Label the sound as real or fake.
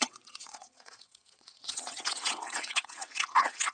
fake